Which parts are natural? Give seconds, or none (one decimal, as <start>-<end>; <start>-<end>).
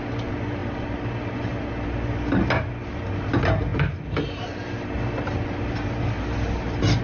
0.0-7.0